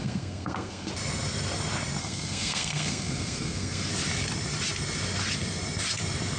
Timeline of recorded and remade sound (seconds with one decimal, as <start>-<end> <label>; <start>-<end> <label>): 0.0-0.9 remade; 0.9-2.0 recorded; 2.0-3.9 remade; 3.9-6.4 recorded